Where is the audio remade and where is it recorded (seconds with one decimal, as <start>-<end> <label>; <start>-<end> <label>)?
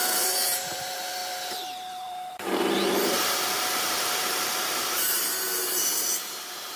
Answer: 0.0-6.8 remade